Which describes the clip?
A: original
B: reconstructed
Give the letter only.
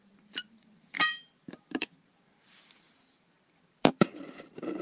B